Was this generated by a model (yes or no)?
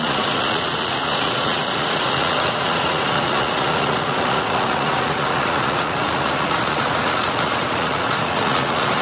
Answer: yes